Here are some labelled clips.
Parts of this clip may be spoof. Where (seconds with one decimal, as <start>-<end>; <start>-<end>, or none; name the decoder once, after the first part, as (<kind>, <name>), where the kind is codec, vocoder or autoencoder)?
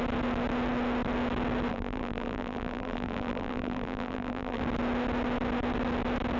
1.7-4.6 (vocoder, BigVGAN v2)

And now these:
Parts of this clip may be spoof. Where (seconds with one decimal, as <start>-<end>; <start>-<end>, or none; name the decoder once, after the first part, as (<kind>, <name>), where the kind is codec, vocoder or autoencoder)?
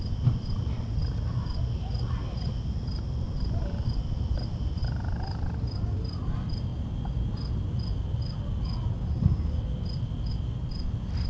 0.0-1.9 (vocoder, BigVGAN v2); 3.0-6.7; 10.3-11.3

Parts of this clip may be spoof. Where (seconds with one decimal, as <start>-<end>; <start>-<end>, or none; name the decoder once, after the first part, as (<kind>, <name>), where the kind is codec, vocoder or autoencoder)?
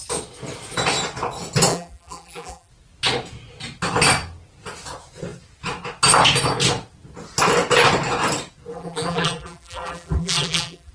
1.7-2.7 (vocoder, BigVGAN v2); 8.7-10.9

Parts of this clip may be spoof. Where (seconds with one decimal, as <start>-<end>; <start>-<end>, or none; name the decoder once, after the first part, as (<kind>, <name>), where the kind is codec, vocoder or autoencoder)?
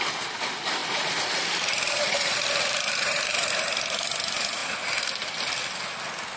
0.8-3.5 (vocoder, BigVGAN v2)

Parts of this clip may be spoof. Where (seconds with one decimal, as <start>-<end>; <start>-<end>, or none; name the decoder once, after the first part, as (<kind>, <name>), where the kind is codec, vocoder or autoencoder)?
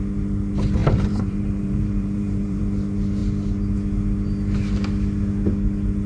0.8-2.6 (vocoder, BigVGAN v2)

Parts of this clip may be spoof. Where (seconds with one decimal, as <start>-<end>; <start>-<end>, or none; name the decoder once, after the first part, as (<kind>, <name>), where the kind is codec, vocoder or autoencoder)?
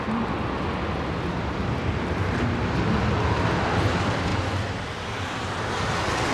4.3-5.2 (vocoder, BigVGAN v2)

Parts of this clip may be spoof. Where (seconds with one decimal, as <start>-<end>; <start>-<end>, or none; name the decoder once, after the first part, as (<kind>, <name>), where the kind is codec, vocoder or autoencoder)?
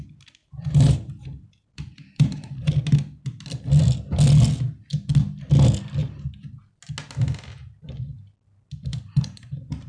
0.4-2.7 (vocoder, BigVGAN v2); 6.0-6.5; 8.9-9.9